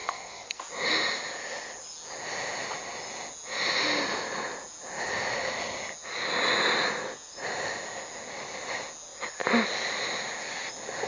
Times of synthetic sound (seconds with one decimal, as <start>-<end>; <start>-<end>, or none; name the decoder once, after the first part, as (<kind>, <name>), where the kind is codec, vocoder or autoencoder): 0.0-0.6 (codec, SNAC)